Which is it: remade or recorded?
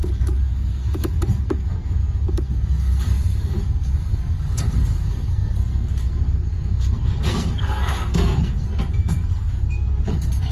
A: remade